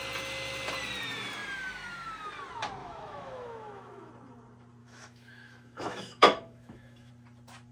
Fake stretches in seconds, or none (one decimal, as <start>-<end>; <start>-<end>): 2.8-4.1; 4.8-7.1